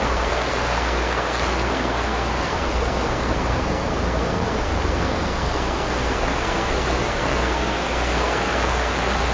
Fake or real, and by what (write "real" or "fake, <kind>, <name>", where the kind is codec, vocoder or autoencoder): fake, codec, SNAC